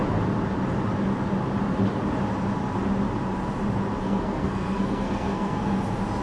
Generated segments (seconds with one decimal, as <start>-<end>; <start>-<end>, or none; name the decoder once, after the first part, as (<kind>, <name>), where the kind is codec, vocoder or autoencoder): 4.0-5.7 (codec, SNAC)